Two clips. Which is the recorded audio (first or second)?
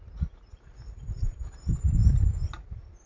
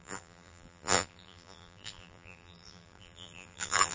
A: first